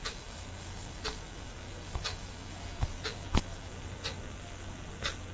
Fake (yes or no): yes